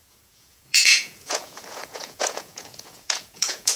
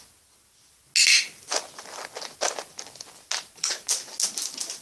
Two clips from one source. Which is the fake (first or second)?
first